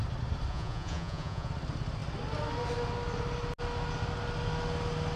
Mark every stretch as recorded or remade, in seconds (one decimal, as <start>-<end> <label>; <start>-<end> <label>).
0.0-0.5 recorded; 0.5-1.5 remade; 1.5-5.2 recorded